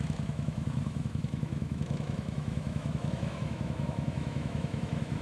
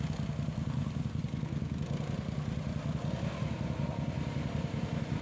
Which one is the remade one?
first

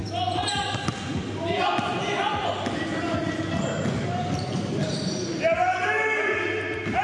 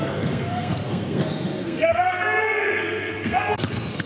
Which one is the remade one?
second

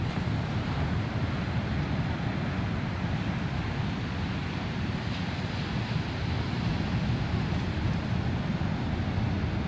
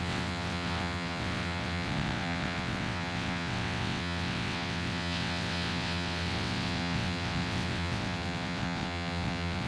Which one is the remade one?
second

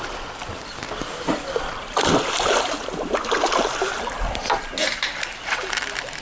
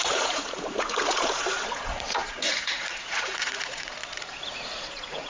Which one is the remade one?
second